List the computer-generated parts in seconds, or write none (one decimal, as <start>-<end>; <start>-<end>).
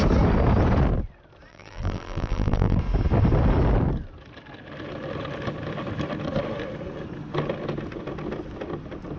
1.5-2.8